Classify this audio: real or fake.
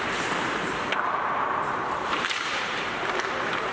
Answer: fake